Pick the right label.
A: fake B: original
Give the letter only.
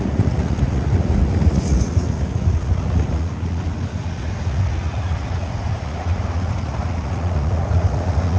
A